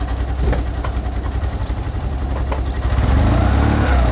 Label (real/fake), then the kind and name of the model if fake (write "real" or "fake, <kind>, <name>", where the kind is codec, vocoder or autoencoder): real